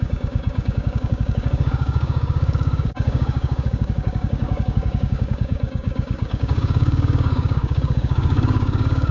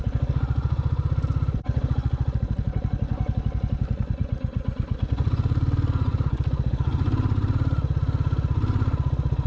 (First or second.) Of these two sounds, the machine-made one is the first